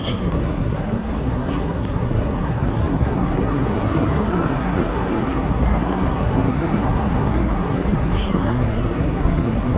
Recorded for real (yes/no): no